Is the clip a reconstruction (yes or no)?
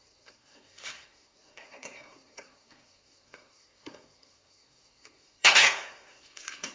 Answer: yes